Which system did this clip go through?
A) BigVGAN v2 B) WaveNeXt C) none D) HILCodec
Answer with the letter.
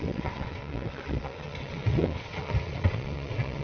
B